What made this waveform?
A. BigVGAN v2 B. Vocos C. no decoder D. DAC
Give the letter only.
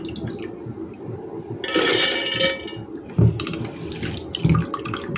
C